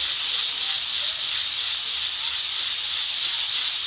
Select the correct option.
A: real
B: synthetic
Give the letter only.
A